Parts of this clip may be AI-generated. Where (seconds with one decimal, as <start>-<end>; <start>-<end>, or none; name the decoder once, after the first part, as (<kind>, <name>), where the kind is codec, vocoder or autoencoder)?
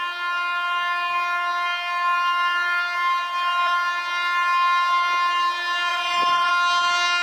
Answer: 5.9-6.5 (vocoder, Vocos)